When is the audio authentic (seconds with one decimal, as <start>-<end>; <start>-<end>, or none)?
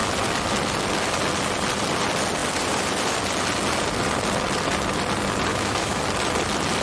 0.0-5.5; 6.0-6.8